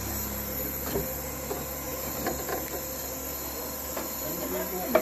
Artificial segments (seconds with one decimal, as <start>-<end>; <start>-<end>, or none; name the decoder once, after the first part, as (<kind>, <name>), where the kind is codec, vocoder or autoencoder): none